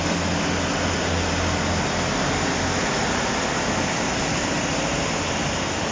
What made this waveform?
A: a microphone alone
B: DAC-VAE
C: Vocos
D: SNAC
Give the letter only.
A